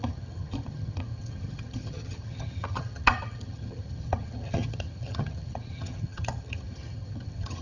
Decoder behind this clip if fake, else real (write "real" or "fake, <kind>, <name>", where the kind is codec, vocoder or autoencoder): fake, vocoder, HiFi-GAN